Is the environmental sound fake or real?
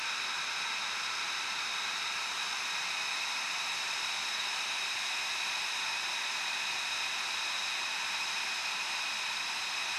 real